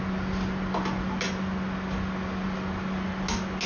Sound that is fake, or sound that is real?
real